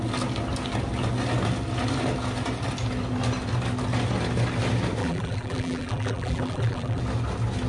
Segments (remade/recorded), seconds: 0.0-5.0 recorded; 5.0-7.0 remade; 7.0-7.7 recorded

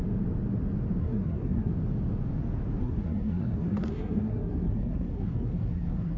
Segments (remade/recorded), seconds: 0.0-1.0 recorded; 1.0-1.7 remade; 1.7-2.8 recorded; 2.8-6.2 remade